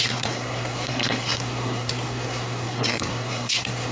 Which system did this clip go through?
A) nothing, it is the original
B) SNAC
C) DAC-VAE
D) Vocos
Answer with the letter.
B